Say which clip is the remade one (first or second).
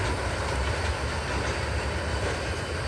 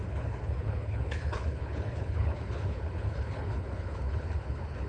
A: second